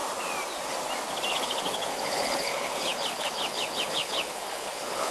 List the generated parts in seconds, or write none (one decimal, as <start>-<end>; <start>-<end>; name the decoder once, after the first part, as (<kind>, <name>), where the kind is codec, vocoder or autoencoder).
1.3-5.1 (codec, HILCodec)